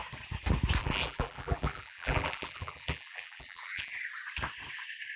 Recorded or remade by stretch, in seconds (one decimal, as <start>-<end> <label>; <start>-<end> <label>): 0.0-0.8 recorded; 0.8-3.9 remade; 3.9-5.2 recorded

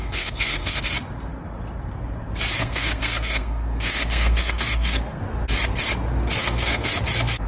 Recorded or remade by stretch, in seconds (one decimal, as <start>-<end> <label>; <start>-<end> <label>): 0.0-0.8 remade; 0.8-2.6 recorded; 2.6-5.2 remade; 5.2-6.4 recorded; 6.4-6.9 remade; 6.9-7.5 recorded

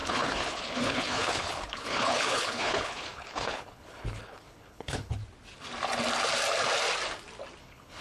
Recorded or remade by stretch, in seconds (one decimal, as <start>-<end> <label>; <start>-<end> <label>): 0.0-5.2 remade; 5.2-7.6 recorded; 7.6-8.0 remade

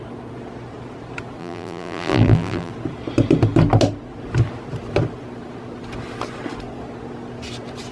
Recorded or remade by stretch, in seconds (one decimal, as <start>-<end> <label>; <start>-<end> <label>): 0.0-1.4 recorded; 1.4-2.7 remade; 2.7-7.9 recorded

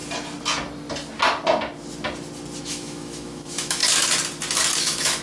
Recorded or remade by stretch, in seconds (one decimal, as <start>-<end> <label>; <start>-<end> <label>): 0.0-2.6 recorded; 2.6-3.8 remade; 3.8-4.8 recorded; 4.8-5.2 remade

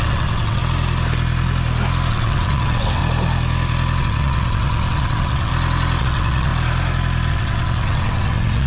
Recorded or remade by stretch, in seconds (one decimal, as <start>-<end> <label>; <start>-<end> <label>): 0.0-0.6 remade; 0.6-2.1 recorded; 2.1-3.0 remade; 3.0-4.0 recorded; 4.0-5.5 remade; 5.5-6.0 recorded; 6.0-6.5 remade; 6.5-7.3 recorded; 7.3-8.7 remade